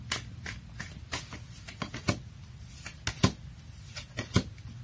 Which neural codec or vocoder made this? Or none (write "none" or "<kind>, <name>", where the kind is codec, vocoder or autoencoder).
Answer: none